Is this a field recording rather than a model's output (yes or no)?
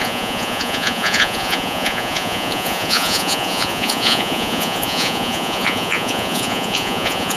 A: no